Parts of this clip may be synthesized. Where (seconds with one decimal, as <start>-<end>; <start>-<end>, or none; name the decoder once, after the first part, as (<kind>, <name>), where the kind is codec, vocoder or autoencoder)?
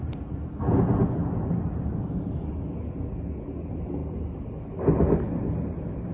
none